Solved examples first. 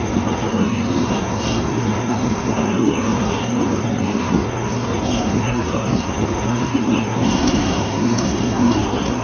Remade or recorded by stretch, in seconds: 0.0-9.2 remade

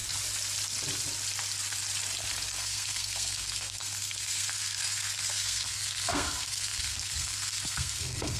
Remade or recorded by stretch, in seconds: 0.0-2.6 recorded; 2.6-8.4 remade

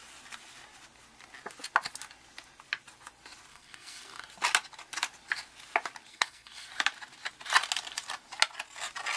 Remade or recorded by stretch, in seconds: 0.0-3.5 recorded; 3.5-4.2 remade; 4.2-6.1 recorded; 6.1-6.7 remade; 6.7-9.2 recorded